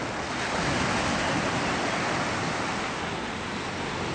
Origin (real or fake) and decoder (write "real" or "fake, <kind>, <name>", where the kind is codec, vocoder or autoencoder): real